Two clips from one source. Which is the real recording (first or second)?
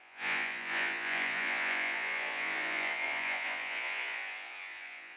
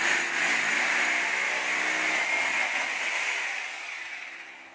second